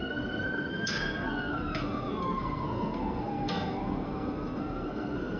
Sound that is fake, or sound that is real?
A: fake